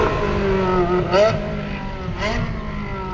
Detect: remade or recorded recorded